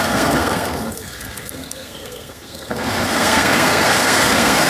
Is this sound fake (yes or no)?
yes